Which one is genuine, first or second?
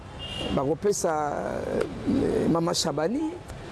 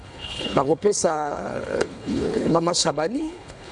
first